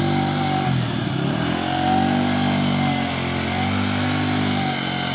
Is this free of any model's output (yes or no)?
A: yes